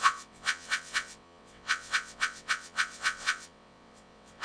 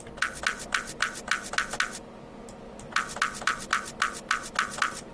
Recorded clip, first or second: second